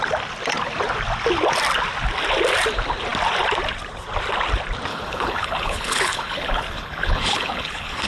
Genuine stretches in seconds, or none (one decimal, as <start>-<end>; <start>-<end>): 0.0-4.9